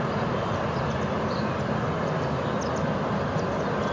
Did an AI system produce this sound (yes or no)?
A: no